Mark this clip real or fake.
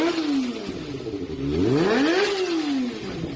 real